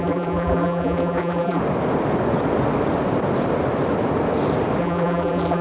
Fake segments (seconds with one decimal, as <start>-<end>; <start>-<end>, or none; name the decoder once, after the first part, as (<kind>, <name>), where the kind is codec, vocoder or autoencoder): 0.0-1.6 (vocoder, BigVGAN v2); 4.8-5.6